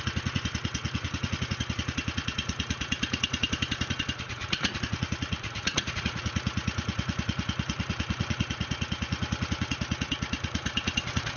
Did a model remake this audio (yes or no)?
yes